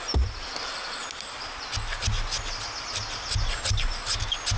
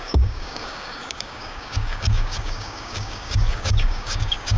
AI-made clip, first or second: second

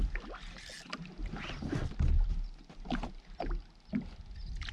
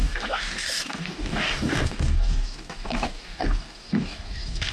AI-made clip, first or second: second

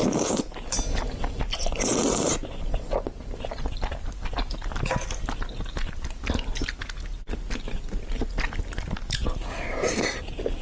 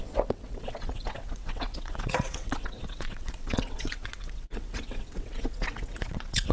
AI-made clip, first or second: second